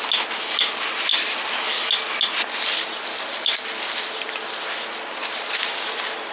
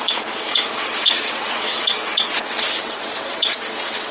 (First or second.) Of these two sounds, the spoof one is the second